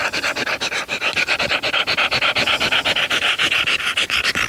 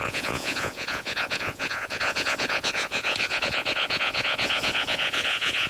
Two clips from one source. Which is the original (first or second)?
first